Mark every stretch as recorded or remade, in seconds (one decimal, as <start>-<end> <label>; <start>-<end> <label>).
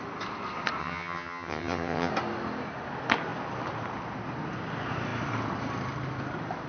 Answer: 0.0-0.8 recorded; 0.8-2.1 remade; 2.1-6.7 recorded